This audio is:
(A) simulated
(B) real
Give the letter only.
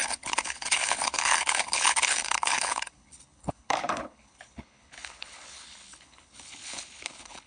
A